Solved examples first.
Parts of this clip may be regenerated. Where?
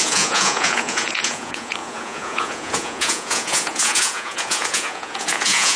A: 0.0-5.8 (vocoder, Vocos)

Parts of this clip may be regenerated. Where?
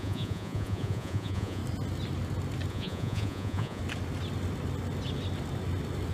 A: 0.0-1.6 (vocoder, Vocos); 2.7-3.8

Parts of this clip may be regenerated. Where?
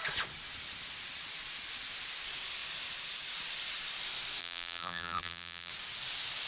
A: 4.4-5.7 (vocoder, BigVGAN v2)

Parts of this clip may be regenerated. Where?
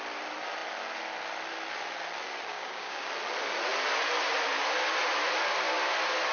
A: 2.5-3.1 (codec, DAC)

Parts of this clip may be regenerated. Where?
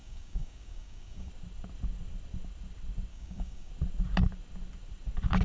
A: 0.0-1.3 (codec, DAC); 3.1-3.7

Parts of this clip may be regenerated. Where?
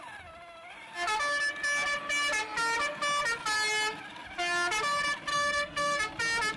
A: 5.3-6.0 (codec, SNAC)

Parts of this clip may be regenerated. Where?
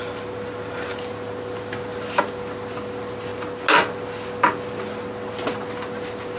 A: none